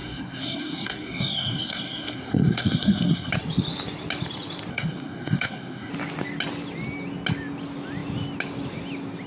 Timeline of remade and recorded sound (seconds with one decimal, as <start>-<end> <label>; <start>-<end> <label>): 0.0-3.3 remade; 3.3-4.7 recorded; 4.7-5.9 remade; 5.9-9.3 recorded